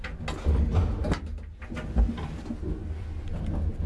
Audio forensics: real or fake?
real